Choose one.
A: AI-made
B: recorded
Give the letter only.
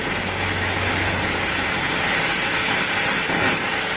B